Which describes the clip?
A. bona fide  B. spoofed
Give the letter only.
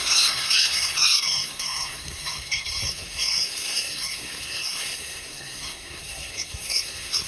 B